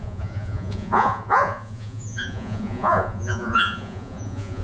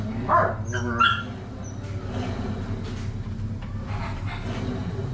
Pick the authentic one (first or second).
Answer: second